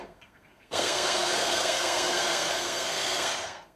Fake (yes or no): yes